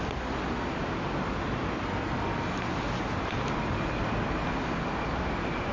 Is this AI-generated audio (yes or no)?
no